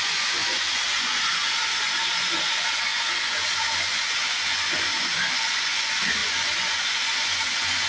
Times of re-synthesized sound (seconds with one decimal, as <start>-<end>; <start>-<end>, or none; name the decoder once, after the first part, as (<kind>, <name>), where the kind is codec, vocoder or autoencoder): 0.0-7.9 (vocoder, Vocos)